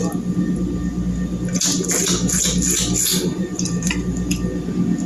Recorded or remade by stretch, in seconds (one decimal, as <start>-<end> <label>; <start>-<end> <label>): 0.0-3.3 recorded; 3.3-3.9 remade; 3.9-5.1 recorded

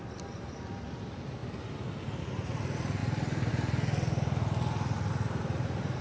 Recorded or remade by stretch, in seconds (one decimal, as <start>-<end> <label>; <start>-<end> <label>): 0.0-6.0 recorded

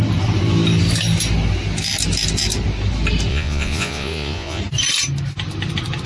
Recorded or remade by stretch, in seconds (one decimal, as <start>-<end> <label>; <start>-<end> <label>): 0.0-3.3 recorded; 3.3-4.6 remade; 4.6-6.1 recorded

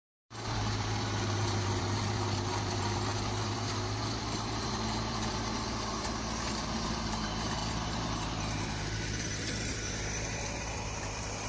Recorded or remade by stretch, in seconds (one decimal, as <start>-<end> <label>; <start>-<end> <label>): 0.0-11.5 remade

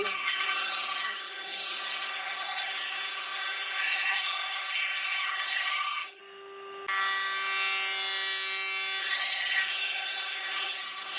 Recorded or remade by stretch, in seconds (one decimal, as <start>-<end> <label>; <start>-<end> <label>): 0.0-6.2 remade; 6.2-9.0 recorded; 9.0-11.2 remade